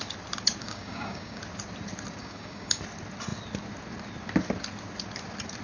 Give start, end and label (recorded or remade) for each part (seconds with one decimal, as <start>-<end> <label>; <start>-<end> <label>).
0.0-0.6 recorded; 0.6-1.4 remade; 1.4-2.2 recorded; 2.2-2.8 remade; 2.8-5.6 recorded